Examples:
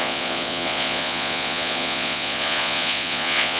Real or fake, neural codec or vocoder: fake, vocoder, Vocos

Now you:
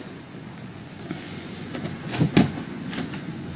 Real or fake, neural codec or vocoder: fake, vocoder, Vocos